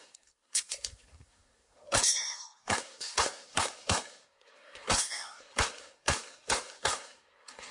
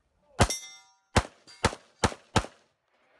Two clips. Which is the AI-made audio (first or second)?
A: first